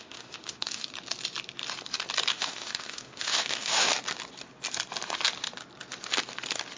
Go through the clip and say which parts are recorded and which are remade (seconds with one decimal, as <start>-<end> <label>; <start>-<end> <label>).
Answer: 0.0-0.9 remade; 0.9-2.3 recorded; 2.3-3.9 remade; 3.9-6.8 recorded